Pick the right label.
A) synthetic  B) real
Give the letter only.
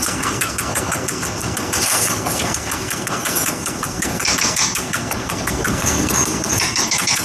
A